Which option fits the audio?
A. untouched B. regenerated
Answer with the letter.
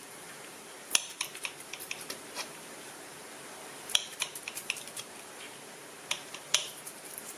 B